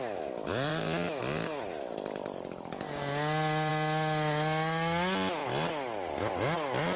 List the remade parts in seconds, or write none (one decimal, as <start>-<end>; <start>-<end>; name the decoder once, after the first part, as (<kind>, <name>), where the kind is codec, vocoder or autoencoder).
none